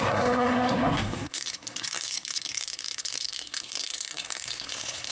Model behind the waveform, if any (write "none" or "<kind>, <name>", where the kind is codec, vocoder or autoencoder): codec, SNAC